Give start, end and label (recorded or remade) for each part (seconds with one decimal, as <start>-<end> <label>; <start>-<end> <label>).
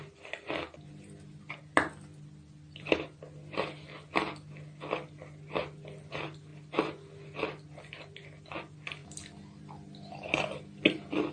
0.0-11.3 recorded